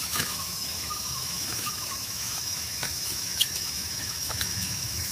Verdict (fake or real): fake